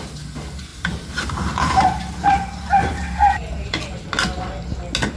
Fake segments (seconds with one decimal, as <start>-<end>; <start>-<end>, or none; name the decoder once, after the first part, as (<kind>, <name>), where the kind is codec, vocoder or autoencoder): 0.7-3.8 (vocoder, BigVGAN v2)

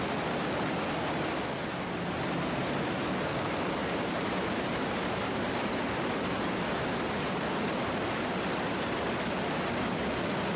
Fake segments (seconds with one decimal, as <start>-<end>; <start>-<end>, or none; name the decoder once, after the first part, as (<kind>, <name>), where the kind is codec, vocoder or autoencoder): 3.8-5.7 (vocoder, BigVGAN v2)

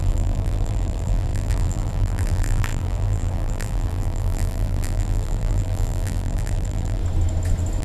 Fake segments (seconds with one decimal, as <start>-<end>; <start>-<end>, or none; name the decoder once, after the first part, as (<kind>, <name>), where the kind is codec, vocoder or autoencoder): 0.0-7.0 (vocoder, BigVGAN v2)

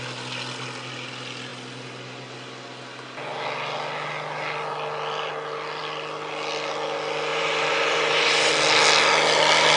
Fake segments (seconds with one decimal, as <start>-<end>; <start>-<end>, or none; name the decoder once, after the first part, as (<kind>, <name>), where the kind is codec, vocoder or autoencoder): 7.3-8.5 (vocoder, BigVGAN v2)